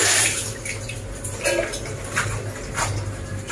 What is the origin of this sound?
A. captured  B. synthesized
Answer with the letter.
A